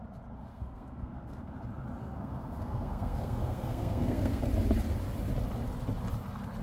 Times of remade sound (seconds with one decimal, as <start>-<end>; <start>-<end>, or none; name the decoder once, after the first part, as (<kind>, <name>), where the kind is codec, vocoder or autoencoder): 0.5-1.5 (codec, SNAC); 2.0-4.4